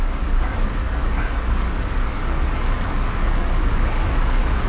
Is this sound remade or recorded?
remade